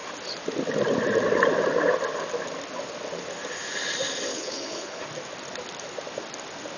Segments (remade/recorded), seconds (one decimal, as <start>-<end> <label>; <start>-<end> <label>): 0.0-4.3 recorded; 4.3-5.0 remade; 5.0-6.8 recorded